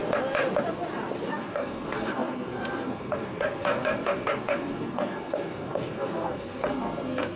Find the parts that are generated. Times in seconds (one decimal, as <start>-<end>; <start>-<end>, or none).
1.3-7.4